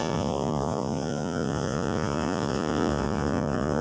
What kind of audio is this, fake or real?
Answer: fake